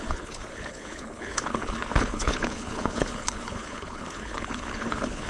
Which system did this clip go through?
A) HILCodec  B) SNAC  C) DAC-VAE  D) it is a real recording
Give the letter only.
A